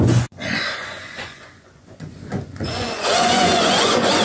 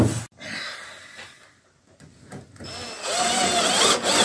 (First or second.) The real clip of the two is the second